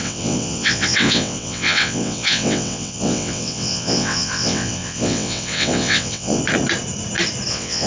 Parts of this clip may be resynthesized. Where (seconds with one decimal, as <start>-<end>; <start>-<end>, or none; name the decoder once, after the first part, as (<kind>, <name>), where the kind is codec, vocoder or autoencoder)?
0.0-6.4 (vocoder, WaveNeXt); 7.5-7.9